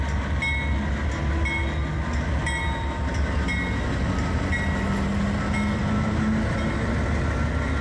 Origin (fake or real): real